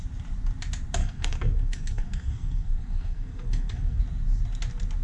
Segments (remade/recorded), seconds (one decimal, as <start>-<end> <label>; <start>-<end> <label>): 0.0-1.0 recorded; 1.0-4.0 remade; 4.0-5.0 recorded